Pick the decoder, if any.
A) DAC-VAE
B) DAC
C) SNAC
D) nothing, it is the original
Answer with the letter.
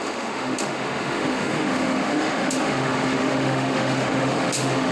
A